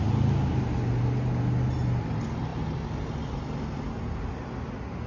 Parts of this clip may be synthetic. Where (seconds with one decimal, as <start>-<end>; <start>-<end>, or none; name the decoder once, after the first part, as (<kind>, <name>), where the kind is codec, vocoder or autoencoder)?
none